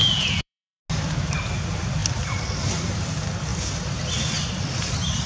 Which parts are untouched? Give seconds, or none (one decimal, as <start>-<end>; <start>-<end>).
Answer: 0.8-5.3